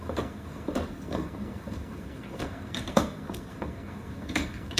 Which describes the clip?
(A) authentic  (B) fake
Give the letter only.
B